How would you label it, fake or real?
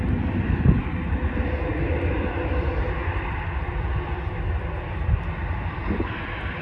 real